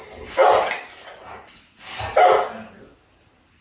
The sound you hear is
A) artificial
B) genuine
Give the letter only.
B